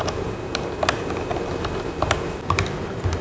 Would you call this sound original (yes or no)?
yes